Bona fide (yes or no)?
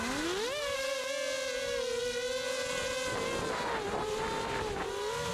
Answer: yes